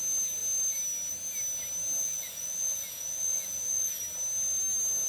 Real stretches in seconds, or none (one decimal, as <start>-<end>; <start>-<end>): 0.0-2.0; 4.0-5.1